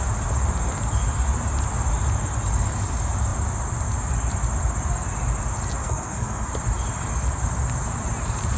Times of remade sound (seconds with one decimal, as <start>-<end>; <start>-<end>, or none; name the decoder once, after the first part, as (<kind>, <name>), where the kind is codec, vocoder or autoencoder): 5.8-6.5 (codec, SNAC)